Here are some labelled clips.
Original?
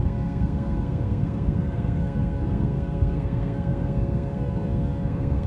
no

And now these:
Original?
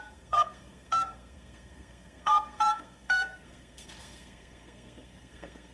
no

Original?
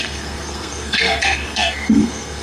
no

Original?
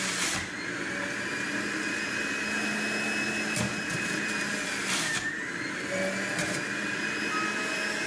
yes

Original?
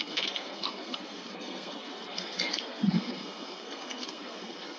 no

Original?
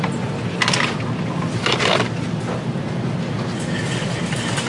yes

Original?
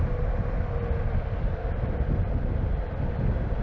yes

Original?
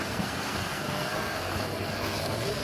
no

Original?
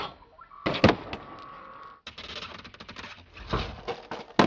yes